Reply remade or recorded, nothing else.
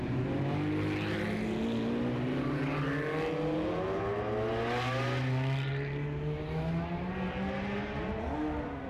recorded